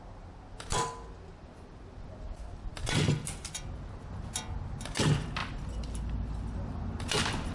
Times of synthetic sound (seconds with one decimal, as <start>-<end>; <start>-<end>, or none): none